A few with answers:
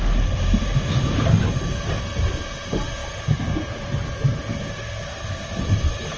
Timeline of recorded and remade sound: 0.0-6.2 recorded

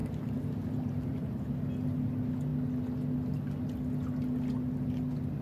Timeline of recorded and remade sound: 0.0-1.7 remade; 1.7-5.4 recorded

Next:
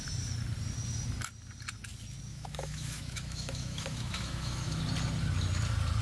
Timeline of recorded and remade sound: 0.0-2.3 recorded; 2.3-4.8 remade; 4.8-6.0 recorded